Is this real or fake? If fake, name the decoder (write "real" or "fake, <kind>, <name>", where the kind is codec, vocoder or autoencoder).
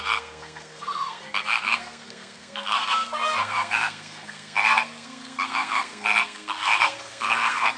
fake, codec, SNAC